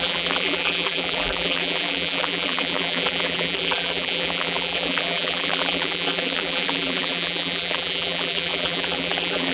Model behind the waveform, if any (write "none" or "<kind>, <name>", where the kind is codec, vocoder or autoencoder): vocoder, BigVGAN v2